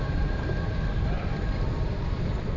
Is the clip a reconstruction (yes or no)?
yes